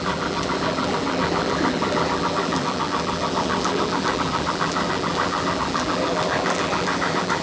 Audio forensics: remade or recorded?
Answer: remade